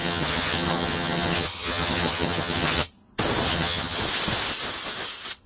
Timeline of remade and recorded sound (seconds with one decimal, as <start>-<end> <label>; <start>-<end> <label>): 0.0-2.9 remade; 2.9-3.5 recorded; 3.5-4.0 remade; 4.0-5.5 recorded

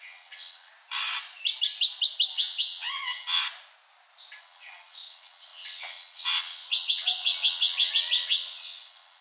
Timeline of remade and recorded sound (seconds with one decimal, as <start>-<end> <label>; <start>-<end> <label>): 0.0-0.7 remade; 0.7-2.3 recorded; 2.3-3.4 remade; 3.4-4.4 recorded; 4.4-9.2 remade

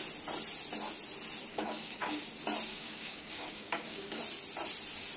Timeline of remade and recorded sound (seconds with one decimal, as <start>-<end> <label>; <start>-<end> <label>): 0.0-1.5 recorded; 1.5-2.2 remade; 2.2-2.7 recorded; 2.7-4.2 remade; 4.2-5.2 recorded

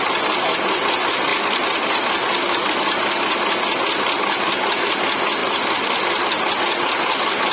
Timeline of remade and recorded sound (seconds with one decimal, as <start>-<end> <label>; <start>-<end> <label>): 0.0-5.4 recorded; 5.4-6.2 remade; 6.2-7.5 recorded

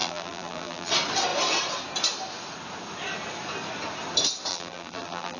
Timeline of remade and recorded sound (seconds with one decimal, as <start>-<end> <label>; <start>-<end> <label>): 0.0-0.9 remade; 0.9-4.5 recorded; 4.5-5.4 remade

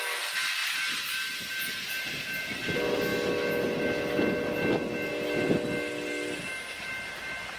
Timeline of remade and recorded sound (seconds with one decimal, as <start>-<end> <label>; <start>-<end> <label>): 0.0-7.6 recorded

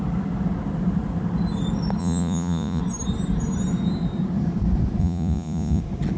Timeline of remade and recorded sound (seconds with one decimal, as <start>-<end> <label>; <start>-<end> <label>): 0.0-2.0 recorded; 2.0-2.8 remade; 2.8-5.0 recorded; 5.0-5.8 remade; 5.8-6.2 recorded

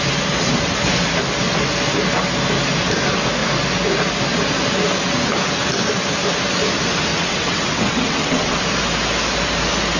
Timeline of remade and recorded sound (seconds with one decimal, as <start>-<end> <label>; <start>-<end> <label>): 0.0-7.1 recorded; 7.1-8.6 remade; 8.6-10.0 recorded